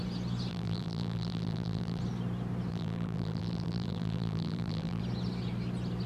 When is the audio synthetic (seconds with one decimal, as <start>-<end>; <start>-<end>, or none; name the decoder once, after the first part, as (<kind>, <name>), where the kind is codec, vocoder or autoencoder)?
0.5-2.0 (vocoder, BigVGAN v2); 2.7-5.0